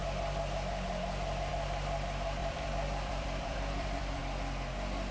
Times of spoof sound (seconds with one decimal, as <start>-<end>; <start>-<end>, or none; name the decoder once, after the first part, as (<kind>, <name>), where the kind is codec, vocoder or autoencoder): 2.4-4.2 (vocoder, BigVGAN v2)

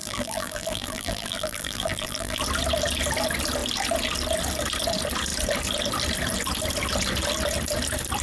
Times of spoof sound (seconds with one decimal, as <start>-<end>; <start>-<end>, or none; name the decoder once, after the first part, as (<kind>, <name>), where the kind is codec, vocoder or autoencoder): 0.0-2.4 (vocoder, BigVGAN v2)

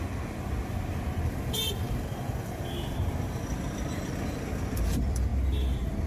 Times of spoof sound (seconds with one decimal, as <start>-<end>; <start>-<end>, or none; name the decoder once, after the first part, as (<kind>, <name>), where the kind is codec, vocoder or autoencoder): 0.0-5.3 (vocoder, BigVGAN v2)

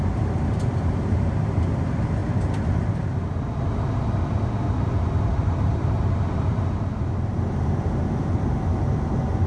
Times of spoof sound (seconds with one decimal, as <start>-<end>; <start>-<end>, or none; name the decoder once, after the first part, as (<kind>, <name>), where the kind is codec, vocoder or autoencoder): 7.3-8.3 (vocoder, BigVGAN v2)

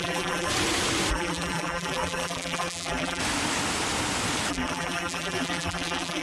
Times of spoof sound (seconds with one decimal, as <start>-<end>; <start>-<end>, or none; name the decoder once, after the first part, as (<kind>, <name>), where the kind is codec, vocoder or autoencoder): 0.0-0.5 (vocoder, BigVGAN v2); 1.1-3.2; 4.5-6.2

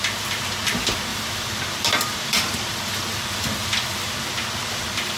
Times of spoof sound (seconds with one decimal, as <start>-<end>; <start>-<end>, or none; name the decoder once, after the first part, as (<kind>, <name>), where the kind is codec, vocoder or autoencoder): 1.1-4.2 (vocoder, BigVGAN v2)

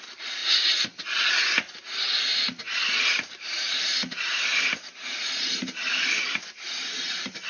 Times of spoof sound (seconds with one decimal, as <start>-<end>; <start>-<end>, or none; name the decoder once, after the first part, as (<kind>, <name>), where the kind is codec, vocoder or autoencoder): 0.0-0.4 (vocoder, BigVGAN v2); 3.1-4.5; 5.2-7.5